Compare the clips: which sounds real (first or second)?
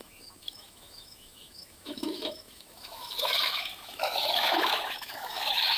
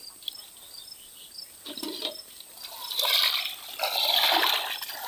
second